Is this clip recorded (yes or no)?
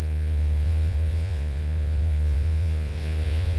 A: no